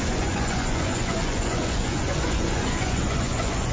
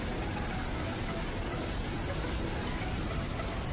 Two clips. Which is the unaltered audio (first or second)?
second